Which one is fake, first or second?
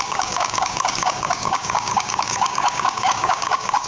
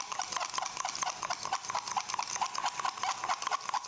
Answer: first